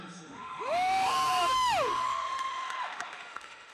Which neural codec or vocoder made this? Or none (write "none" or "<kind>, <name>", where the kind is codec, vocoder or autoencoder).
autoencoder, DAC-VAE